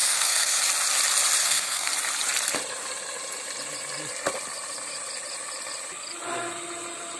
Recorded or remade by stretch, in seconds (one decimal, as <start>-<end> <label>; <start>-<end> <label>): 0.0-0.6 remade; 0.6-1.4 recorded; 1.4-1.9 remade; 1.9-7.2 recorded